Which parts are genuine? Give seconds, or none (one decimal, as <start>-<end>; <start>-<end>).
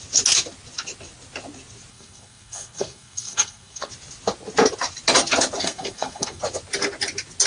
0.0-1.9; 3.9-5.6; 6.4-7.5